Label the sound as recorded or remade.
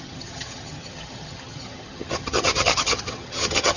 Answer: remade